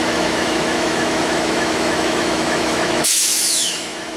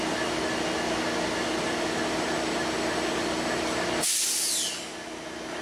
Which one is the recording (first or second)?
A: second